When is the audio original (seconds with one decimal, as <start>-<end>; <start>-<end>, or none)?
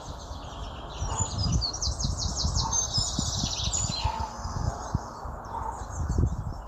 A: 0.0-4.0; 4.7-6.7